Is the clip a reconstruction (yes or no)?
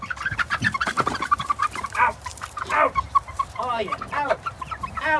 yes